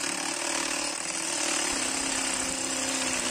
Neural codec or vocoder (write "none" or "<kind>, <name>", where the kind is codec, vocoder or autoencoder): none